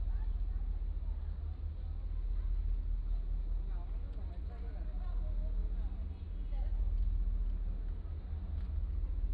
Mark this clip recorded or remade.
recorded